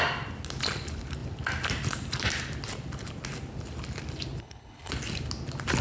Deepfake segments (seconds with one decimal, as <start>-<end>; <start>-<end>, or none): 4.4-4.9